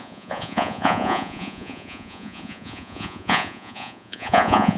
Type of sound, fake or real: fake